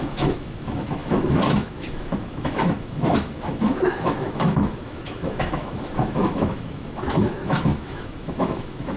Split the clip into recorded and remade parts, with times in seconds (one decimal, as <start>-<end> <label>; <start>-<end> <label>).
0.0-9.0 remade

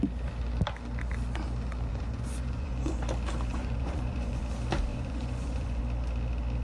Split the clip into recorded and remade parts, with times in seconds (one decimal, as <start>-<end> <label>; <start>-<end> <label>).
0.0-1.9 recorded; 1.9-2.9 remade; 2.9-3.5 recorded; 3.5-4.4 remade; 4.4-4.9 recorded; 4.9-5.8 remade; 5.8-6.6 recorded

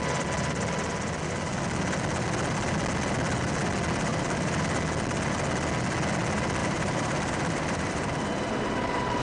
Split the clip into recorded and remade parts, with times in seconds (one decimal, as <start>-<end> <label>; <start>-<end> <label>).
0.0-4.1 recorded; 4.1-4.6 remade; 4.6-6.6 recorded; 6.6-9.2 remade

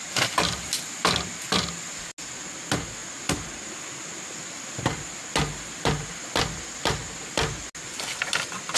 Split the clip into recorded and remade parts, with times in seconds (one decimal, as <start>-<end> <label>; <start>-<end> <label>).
0.0-8.8 recorded